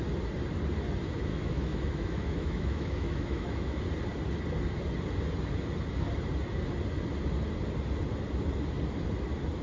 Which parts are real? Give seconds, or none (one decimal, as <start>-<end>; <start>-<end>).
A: 0.0-1.3; 3.8-9.6